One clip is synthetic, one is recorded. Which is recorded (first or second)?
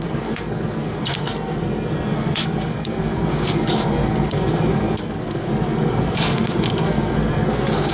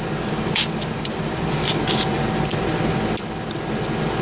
second